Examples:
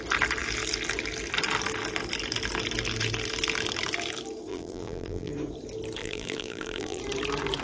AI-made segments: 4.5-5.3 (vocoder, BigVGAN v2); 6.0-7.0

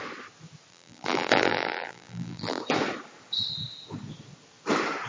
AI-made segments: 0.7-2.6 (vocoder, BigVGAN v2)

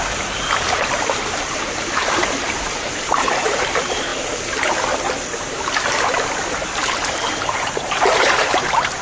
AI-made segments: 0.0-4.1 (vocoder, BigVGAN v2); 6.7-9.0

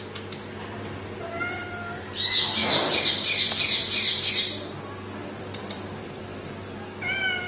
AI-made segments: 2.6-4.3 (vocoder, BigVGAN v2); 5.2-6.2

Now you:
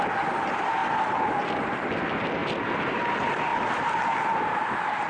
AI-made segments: 0.8-2.0 (vocoder, BigVGAN v2); 2.4-3.0; 3.5-5.1

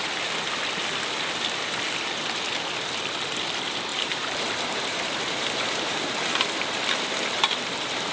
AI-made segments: 3.9-6.8 (vocoder, BigVGAN v2); 7.4-8.1

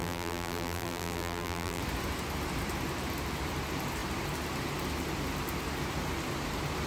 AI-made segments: 0.0-1.8 (vocoder, BigVGAN v2)